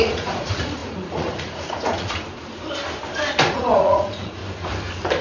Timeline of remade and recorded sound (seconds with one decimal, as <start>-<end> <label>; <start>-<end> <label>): 0.0-2.2 remade; 2.2-3.5 recorded; 3.5-4.4 remade; 4.4-5.2 recorded